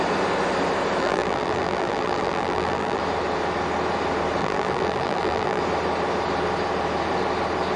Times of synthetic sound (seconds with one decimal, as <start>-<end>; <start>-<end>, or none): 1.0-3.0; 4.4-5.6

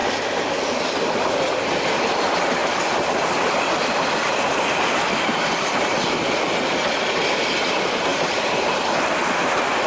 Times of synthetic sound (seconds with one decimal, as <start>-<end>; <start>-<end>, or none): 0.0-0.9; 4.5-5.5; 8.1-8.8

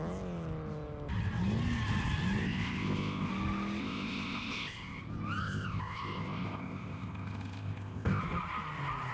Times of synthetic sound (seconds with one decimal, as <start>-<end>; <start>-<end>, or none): 2.4-3.3; 3.8-5.0; 5.4-8.2